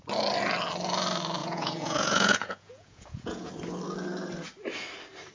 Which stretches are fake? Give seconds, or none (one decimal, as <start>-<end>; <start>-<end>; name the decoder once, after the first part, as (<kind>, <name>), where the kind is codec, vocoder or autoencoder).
1.4-3.5 (vocoder, Vocos)